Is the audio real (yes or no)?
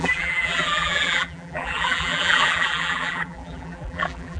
no